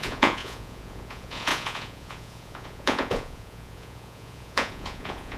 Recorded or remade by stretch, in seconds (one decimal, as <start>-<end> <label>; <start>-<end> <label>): 0.0-5.4 remade